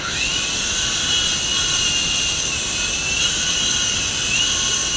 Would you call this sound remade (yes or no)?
no